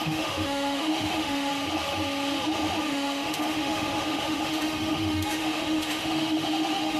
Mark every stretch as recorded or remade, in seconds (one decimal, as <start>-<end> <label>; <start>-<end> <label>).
0.0-1.5 remade; 1.5-2.8 recorded; 2.8-7.0 remade